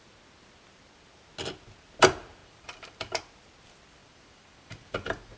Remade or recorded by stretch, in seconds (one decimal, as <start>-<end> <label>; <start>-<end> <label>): 0.0-2.4 recorded; 2.4-3.3 remade; 3.3-4.0 recorded; 4.0-5.4 remade